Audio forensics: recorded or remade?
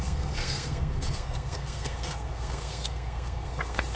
remade